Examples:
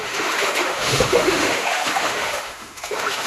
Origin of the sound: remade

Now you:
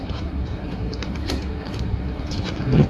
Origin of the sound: remade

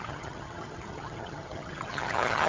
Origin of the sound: remade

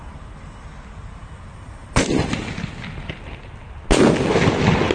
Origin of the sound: recorded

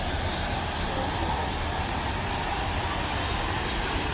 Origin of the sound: recorded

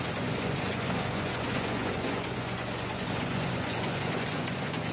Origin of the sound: remade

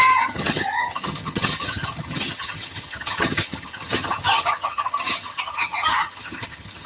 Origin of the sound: remade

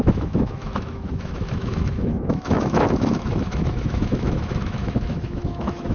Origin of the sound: remade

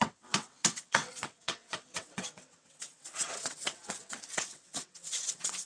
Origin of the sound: remade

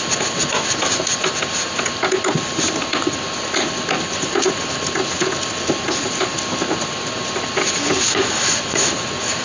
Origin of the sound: recorded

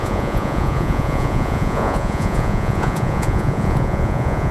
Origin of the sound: remade